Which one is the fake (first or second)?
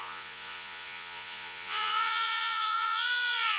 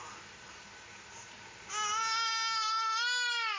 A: first